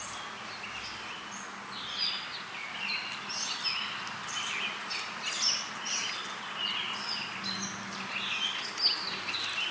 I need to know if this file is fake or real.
real